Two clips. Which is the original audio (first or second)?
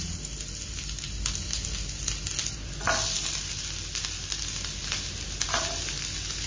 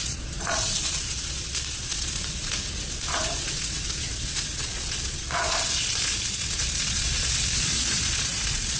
first